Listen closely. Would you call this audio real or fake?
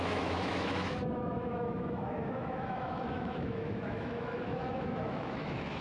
fake